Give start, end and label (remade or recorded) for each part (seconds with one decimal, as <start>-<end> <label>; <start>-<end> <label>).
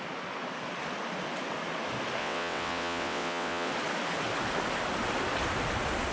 0.0-2.2 recorded; 2.2-3.7 remade; 3.7-6.1 recorded